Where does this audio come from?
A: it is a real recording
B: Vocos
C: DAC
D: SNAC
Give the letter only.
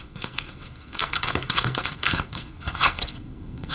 D